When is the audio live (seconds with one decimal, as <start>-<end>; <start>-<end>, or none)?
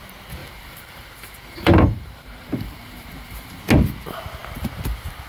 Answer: 0.0-0.4; 3.6-5.3